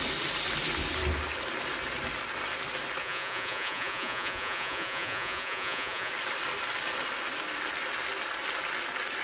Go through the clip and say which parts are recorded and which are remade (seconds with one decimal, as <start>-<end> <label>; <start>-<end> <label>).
0.0-3.0 recorded; 3.0-6.1 remade; 6.1-9.2 recorded